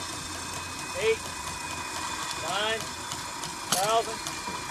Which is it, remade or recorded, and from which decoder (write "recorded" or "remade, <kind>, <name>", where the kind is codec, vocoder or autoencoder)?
recorded